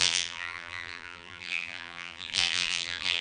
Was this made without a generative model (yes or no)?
no